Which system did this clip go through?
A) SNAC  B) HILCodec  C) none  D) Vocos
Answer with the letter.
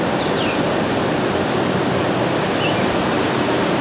C